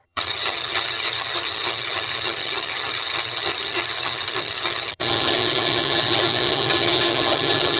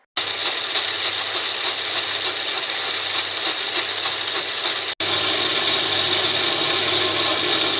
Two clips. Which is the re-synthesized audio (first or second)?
first